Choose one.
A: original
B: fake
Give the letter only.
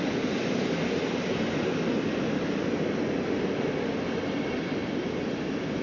A